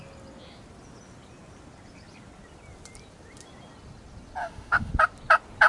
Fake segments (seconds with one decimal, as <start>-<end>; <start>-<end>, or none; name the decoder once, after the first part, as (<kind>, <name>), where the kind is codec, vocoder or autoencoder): 4.4-4.9 (autoencoder, DAC-VAE)